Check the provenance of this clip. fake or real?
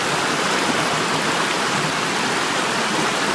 real